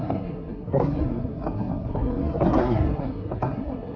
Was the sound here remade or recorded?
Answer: remade